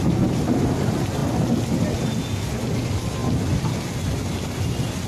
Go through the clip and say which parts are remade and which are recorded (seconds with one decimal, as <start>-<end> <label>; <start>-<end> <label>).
0.0-5.1 recorded